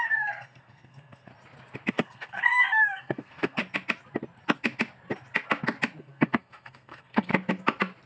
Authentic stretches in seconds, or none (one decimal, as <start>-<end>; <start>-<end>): 1.3-1.9; 3.6-6.0; 7.3-8.1